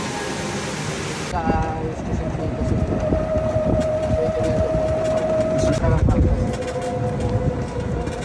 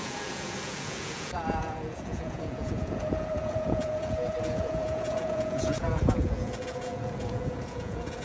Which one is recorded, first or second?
first